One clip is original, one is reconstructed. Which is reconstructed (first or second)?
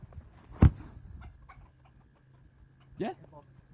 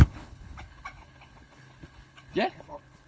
second